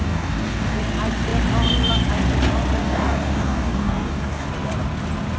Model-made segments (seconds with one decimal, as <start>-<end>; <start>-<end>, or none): 0.0-0.8; 2.8-4.5